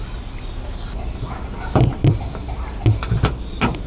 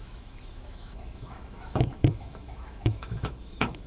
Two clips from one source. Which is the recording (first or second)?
first